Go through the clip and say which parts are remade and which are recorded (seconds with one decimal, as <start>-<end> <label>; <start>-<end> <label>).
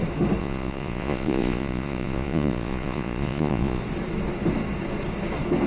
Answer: 0.0-0.4 recorded; 0.4-3.8 remade; 3.8-5.7 recorded